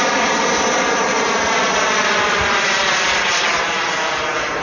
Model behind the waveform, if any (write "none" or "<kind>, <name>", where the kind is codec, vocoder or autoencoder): none